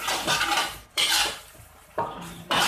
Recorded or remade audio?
remade